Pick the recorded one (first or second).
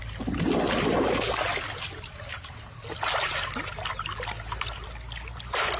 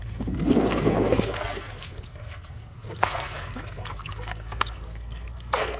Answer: first